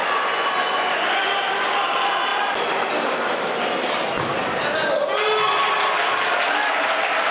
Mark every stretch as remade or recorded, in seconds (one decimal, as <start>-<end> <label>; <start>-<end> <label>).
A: 0.0-1.3 remade; 1.3-7.3 recorded